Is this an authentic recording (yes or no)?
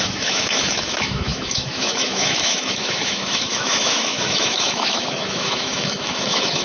no